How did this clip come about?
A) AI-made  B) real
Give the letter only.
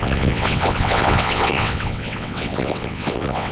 A